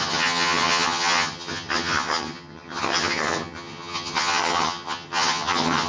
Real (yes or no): no